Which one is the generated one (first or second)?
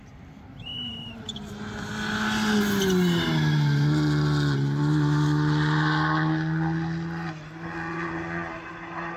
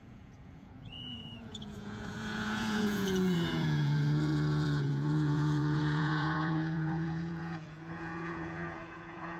second